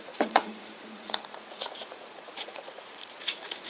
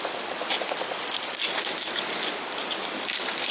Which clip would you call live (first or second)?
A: second